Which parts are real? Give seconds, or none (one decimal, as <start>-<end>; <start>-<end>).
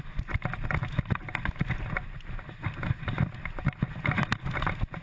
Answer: 0.0-5.0